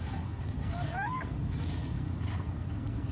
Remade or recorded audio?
remade